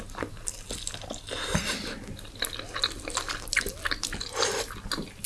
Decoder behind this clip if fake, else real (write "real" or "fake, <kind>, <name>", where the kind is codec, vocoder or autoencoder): real